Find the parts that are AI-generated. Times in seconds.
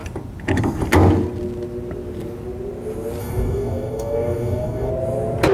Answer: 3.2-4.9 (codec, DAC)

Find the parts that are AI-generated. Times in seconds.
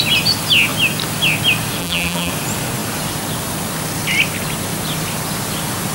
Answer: 1.8-2.3 (vocoder, BigVGAN v2)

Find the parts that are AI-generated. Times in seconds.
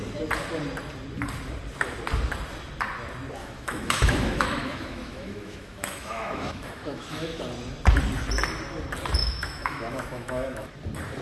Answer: 3.4-7.4 (autoencoder, DAC-VAE); 9.2-10.7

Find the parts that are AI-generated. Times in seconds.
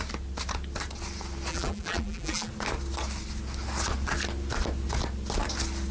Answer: 1.5-2.5 (vocoder, BigVGAN v2)